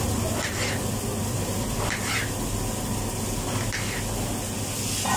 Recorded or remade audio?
recorded